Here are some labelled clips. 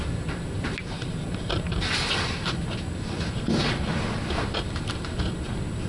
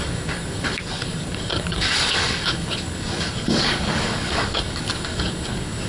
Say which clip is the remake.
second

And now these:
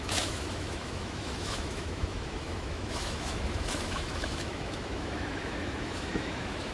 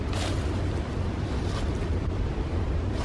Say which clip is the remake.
first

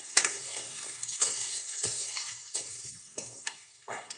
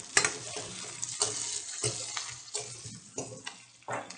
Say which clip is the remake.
first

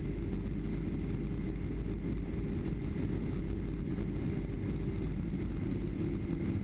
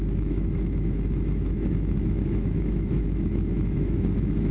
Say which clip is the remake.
second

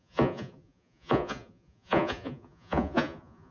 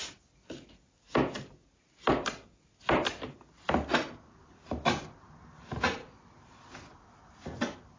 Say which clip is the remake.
first